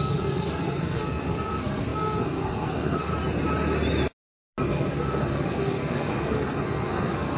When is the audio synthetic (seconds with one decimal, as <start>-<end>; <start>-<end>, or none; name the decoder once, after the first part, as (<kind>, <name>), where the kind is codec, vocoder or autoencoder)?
0.0-3.1 (codec, SNAC); 4.7-7.4